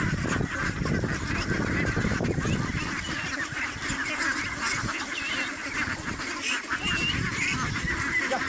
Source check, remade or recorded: recorded